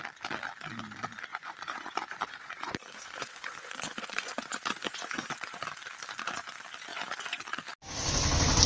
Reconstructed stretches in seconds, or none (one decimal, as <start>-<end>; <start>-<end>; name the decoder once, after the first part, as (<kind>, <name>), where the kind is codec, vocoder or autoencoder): 1.3-5.6 (vocoder, Vocos); 6.9-7.4